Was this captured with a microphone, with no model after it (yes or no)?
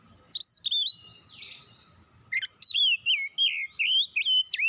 yes